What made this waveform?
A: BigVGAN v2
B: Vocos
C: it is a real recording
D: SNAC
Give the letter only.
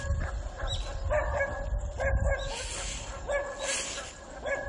C